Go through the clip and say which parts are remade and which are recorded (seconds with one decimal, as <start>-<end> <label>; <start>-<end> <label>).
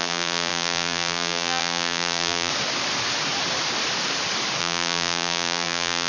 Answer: 0.0-2.5 remade; 2.5-4.6 recorded; 4.6-6.1 remade